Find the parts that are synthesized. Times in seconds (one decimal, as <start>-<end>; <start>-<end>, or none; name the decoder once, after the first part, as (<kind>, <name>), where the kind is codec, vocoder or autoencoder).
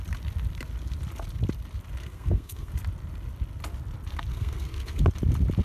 2.0-2.7 (codec, SNAC); 4.3-5.0